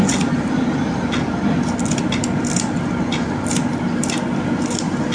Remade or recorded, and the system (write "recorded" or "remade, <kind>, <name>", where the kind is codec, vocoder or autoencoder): remade, vocoder, BigVGAN v2